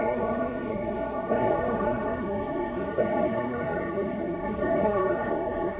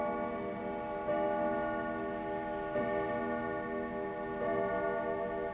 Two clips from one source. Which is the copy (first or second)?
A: first